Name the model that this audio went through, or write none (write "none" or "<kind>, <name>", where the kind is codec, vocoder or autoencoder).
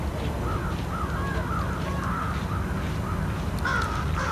none